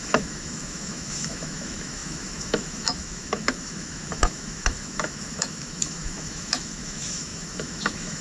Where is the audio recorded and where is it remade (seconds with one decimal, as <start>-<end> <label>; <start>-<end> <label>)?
0.0-8.2 remade